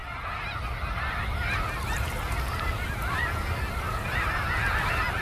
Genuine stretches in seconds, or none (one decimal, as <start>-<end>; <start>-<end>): 0.0-5.2